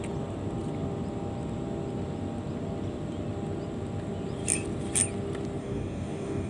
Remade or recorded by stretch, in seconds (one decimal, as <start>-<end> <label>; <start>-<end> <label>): 0.0-5.6 recorded; 5.6-6.5 remade